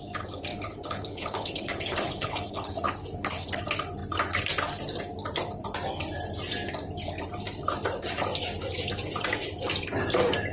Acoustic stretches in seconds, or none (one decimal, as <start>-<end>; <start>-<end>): 0.0-0.5; 3.6-10.5